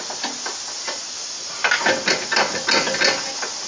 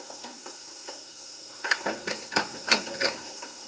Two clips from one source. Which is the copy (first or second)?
second